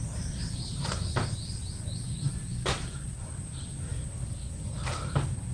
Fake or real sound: real